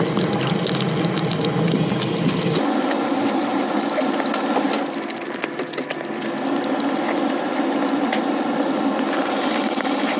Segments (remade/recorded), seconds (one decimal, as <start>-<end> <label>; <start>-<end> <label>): 0.0-10.2 recorded